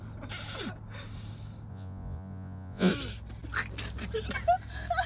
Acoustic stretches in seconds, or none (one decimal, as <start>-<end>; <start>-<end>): 0.0-1.7; 2.9-5.1